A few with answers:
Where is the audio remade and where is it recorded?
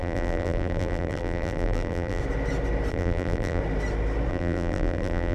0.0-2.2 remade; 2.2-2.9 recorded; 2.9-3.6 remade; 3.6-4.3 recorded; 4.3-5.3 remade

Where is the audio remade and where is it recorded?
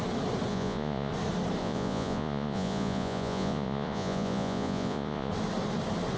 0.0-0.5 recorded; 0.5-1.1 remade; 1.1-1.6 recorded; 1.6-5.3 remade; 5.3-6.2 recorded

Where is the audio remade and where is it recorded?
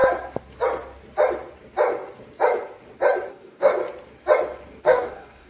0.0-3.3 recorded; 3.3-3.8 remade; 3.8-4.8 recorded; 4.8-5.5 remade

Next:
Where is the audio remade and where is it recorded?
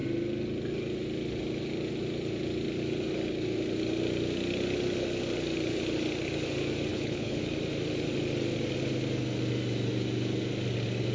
0.0-6.9 recorded; 6.9-7.4 remade; 7.4-11.1 recorded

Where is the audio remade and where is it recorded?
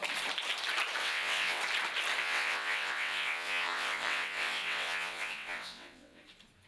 0.0-1.0 recorded; 1.0-1.6 remade; 1.6-2.2 recorded; 2.2-6.2 remade; 6.2-6.7 recorded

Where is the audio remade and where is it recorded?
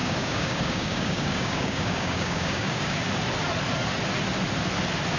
0.0-3.1 remade; 3.1-5.2 recorded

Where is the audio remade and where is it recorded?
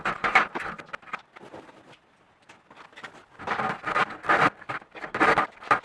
0.0-5.8 recorded